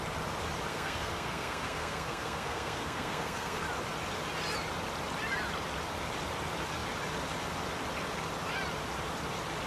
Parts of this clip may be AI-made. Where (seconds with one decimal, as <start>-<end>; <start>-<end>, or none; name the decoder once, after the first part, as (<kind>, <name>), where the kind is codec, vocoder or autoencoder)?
0.7-3.6 (codec, SNAC)